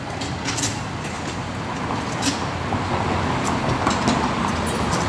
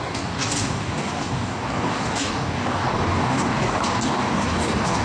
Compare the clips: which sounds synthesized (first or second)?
second